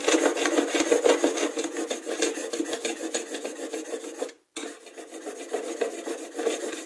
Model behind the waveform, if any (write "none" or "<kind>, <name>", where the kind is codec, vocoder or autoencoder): none